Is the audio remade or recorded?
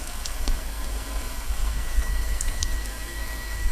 remade